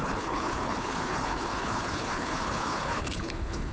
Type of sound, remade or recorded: remade